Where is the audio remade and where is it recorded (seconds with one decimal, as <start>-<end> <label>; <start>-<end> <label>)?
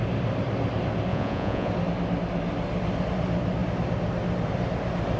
0.0-1.1 recorded; 1.1-1.7 remade; 1.7-5.2 recorded